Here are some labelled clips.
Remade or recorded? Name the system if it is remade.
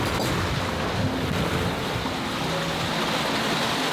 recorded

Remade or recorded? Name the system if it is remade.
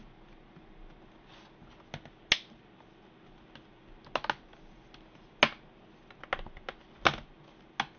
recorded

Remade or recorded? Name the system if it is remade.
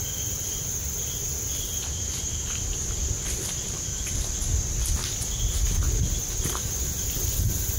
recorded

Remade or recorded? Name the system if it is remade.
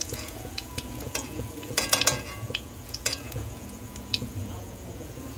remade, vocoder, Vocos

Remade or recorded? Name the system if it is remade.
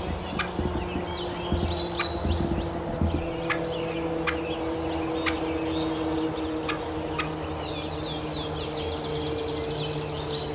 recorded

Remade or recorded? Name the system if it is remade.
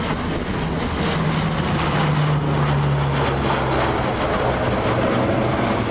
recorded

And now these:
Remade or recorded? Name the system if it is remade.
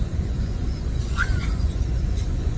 remade, vocoder, Vocos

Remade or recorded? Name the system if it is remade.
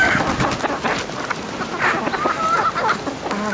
recorded